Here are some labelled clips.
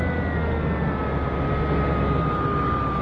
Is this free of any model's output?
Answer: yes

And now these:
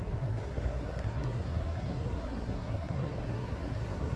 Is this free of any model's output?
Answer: no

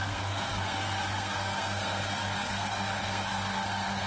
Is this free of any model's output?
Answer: no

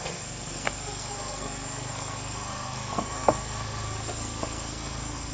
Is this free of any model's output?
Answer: no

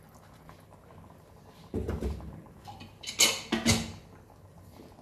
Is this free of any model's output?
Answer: yes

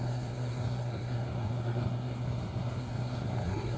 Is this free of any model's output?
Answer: no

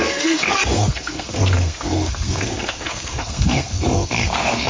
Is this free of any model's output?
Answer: no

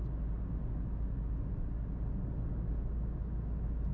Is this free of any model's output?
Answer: yes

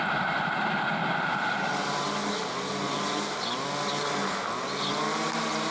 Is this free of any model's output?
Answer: yes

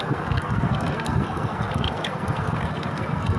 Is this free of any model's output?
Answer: no